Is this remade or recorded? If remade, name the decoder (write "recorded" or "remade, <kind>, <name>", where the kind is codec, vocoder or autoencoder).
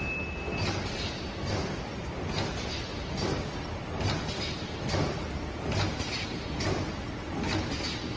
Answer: recorded